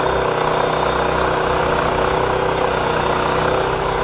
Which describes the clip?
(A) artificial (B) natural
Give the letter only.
B